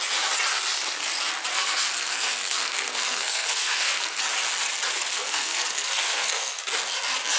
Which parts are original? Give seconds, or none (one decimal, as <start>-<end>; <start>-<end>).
0.0-1.5; 4.2-5.1; 6.6-7.4